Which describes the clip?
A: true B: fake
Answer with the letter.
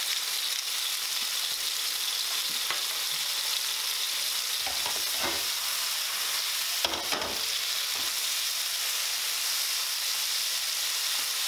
A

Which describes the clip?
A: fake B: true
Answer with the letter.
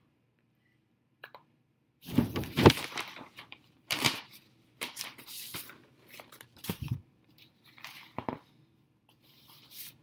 A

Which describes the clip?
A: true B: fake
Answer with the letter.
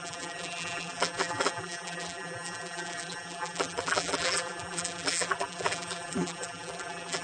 B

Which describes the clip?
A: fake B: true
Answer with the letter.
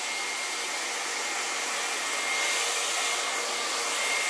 B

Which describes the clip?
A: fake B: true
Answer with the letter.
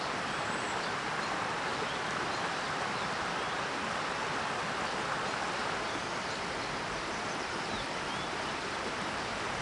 A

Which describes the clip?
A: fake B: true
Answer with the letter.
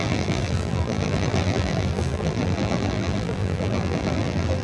A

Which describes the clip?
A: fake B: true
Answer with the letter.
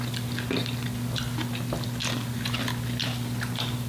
B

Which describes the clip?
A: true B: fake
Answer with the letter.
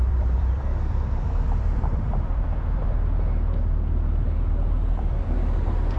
B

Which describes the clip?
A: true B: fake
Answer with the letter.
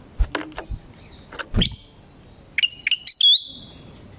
A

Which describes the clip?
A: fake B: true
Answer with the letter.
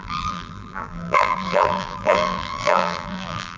A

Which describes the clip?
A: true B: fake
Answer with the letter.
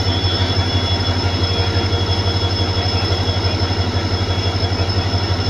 A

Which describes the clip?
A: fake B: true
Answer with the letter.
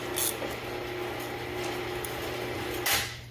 B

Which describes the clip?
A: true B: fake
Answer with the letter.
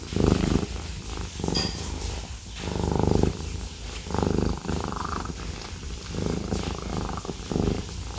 B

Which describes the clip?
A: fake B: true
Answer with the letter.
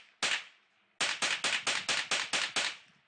B